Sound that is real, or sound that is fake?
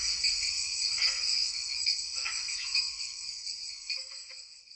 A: fake